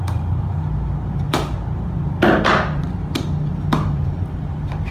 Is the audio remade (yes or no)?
yes